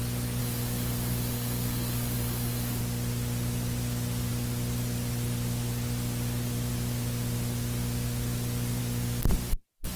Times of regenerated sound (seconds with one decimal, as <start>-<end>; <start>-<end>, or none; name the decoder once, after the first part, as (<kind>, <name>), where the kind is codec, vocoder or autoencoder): 0.4-2.8 (codec, DAC)